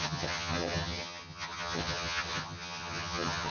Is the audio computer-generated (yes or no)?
yes